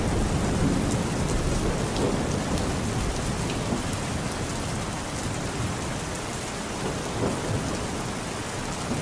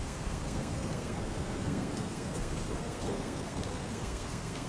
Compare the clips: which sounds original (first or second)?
first